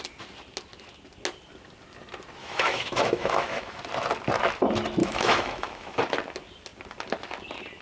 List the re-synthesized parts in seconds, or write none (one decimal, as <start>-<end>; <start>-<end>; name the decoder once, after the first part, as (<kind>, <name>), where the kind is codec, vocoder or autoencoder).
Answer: 2.4-3.8 (autoencoder, DAC-VAE); 5.0-6.0